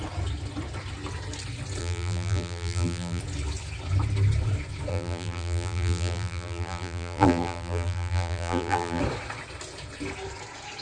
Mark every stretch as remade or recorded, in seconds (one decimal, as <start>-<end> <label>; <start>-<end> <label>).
0.0-1.8 recorded; 1.8-3.2 remade; 3.2-4.9 recorded; 4.9-9.0 remade; 9.0-10.8 recorded